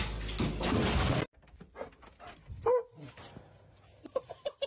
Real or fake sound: real